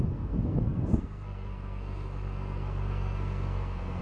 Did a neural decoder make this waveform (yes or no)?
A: yes